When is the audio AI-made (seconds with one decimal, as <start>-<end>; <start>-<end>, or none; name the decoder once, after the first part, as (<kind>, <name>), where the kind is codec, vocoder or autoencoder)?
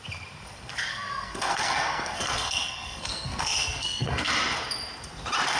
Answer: 0.9-4.3 (codec, SNAC)